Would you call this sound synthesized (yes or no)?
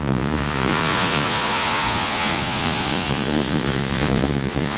yes